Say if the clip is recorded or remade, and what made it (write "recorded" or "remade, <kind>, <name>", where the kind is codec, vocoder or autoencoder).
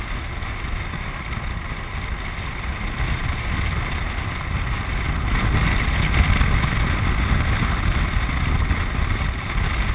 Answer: recorded